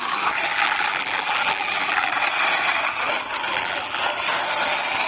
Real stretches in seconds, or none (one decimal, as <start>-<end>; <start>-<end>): 0.0-0.5; 2.1-3.5; 4.0-5.1